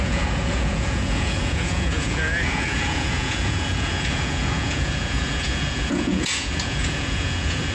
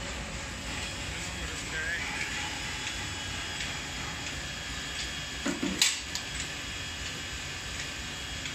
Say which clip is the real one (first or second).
second